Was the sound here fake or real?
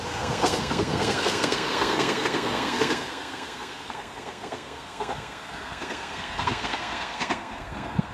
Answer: fake